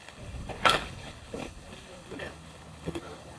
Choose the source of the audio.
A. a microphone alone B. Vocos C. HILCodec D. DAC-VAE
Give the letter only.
C